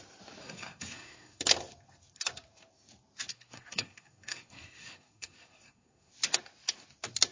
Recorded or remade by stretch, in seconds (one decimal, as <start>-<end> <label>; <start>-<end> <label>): 0.0-0.4 recorded; 0.4-1.4 remade; 1.4-3.3 recorded; 3.3-6.1 remade; 6.1-7.3 recorded